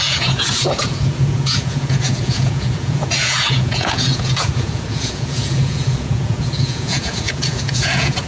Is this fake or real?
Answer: fake